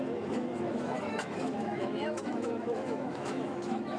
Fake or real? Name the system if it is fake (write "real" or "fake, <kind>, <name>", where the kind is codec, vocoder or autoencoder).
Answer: fake, autoencoder, DAC-VAE